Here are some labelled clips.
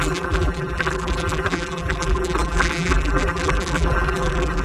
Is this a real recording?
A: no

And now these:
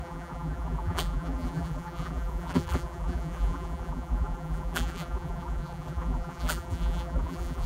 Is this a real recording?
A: no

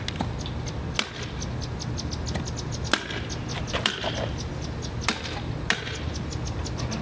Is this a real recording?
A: yes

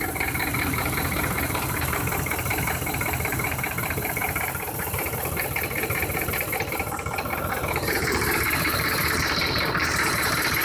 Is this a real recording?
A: no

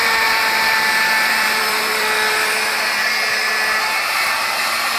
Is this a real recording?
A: no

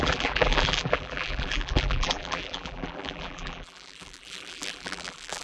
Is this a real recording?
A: no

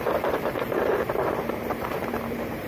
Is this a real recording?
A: no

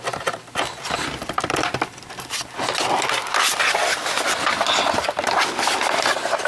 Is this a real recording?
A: no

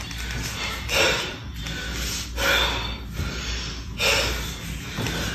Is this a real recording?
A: yes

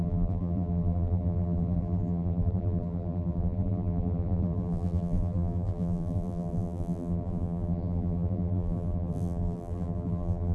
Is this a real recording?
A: no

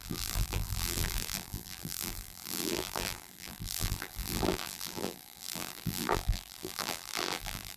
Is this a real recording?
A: no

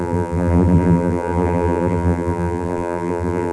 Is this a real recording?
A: no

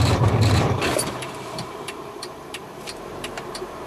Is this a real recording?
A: no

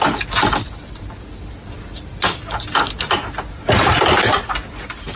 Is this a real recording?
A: yes